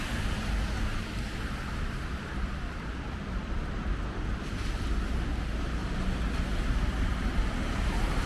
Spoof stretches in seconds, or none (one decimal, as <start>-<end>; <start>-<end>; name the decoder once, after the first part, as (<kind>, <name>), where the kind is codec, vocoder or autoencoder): 0.9-3.8 (vocoder, BigVGAN v2); 7.1-7.8